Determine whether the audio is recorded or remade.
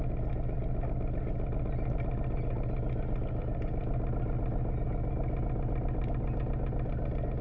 recorded